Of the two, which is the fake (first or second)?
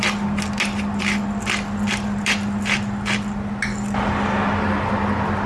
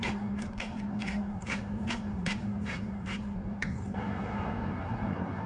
second